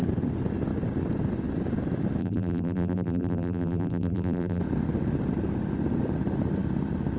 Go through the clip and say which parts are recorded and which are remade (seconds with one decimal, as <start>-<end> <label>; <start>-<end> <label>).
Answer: 0.0-2.2 recorded; 2.2-4.6 remade; 4.6-7.2 recorded